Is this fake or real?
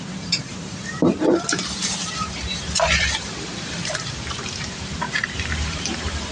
fake